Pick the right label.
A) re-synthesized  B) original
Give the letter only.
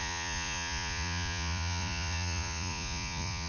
A